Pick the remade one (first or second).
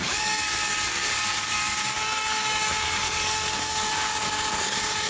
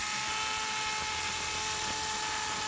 first